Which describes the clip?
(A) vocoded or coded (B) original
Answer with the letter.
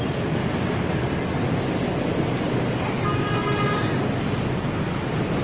B